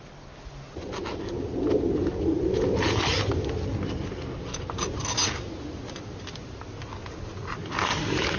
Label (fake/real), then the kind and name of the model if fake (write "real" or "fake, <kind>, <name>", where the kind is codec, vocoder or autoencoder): real